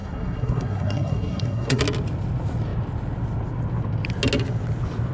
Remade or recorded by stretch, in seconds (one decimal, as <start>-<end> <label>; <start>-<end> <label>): 0.0-1.8 remade; 1.8-5.1 recorded